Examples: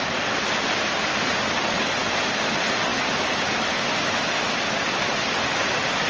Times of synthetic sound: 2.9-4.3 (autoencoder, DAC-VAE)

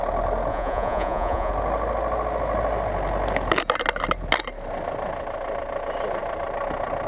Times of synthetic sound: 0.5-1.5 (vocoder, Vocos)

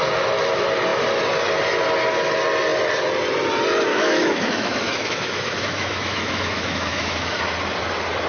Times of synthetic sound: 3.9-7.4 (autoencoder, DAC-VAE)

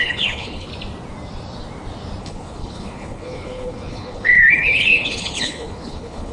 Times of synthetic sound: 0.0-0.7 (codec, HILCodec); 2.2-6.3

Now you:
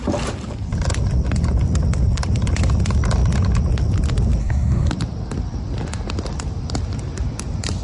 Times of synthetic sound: 4.4-4.9 (codec, SNAC)

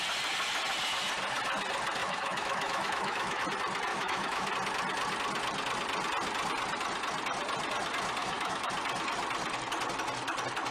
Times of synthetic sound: 2.0-3.4 (autoencoder, DAC-VAE); 3.9-4.5; 8.2-8.7

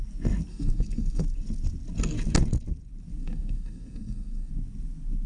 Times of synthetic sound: 0.5-1.2 (codec, SNAC); 3.2-4.5

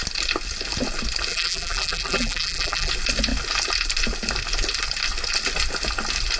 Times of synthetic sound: 1.3-2.9 (vocoder, BigVGAN v2)